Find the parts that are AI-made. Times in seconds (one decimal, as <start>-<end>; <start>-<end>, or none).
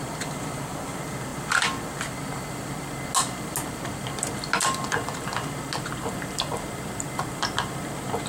none